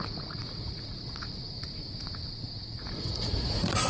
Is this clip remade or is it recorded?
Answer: remade